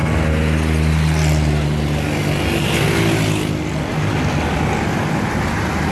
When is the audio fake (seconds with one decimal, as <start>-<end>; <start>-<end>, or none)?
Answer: none